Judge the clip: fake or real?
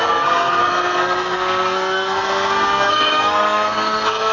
fake